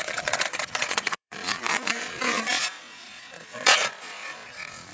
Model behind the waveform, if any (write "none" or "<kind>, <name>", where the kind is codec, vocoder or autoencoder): vocoder, Vocos